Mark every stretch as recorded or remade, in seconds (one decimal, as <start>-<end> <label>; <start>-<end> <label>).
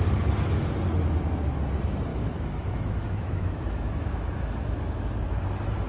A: 0.0-2.1 recorded; 2.1-5.1 remade; 5.1-5.9 recorded